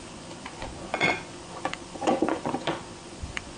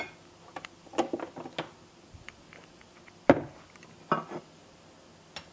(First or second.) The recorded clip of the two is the second